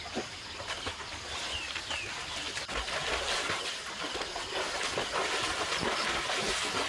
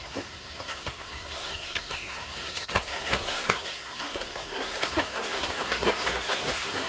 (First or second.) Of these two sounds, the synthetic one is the second